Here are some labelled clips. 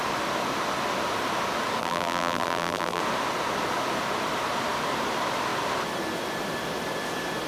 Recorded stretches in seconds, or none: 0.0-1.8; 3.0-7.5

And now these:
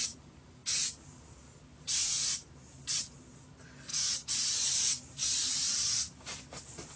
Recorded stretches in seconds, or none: 3.9-4.7

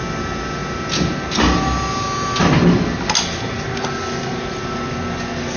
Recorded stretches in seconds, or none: 0.0-5.6

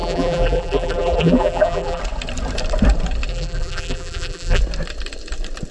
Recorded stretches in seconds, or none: 2.0-3.3; 4.6-5.7

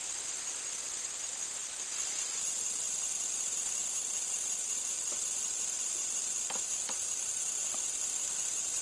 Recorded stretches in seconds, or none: 0.0-3.8; 5.6-8.8

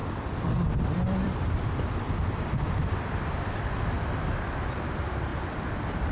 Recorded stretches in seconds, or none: 3.6-5.3

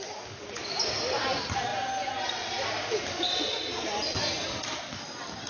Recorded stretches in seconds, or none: 0.0-5.5